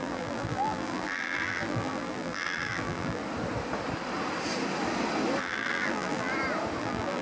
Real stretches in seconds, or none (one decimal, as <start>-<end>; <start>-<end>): 3.2-5.4; 6.3-6.8